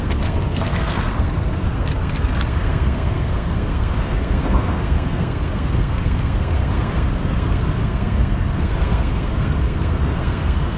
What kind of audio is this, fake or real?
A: fake